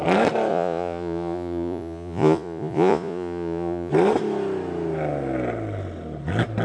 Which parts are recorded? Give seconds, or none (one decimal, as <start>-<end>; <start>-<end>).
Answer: 0.0-0.5; 3.9-6.6